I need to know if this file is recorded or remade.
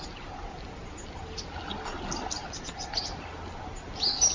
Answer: recorded